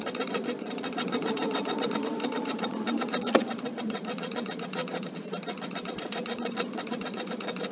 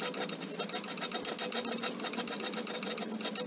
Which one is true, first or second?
second